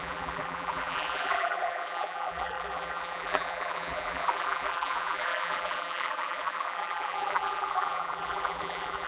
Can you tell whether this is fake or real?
fake